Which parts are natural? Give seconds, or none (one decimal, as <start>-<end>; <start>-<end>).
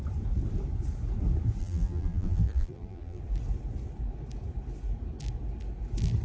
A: 0.0-1.6; 3.2-6.2